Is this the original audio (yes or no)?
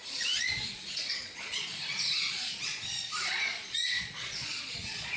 no